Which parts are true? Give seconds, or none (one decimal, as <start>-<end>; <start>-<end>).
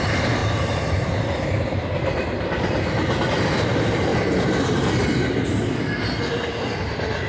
4.1-6.8